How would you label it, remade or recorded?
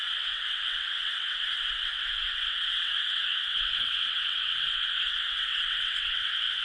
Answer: remade